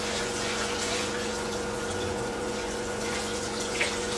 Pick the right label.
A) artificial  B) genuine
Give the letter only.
A